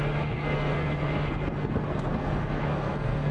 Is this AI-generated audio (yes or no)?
yes